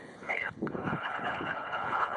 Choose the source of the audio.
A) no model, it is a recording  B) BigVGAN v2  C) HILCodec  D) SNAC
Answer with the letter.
C